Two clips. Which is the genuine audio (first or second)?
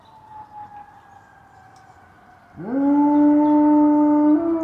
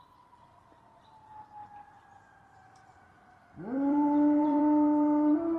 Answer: first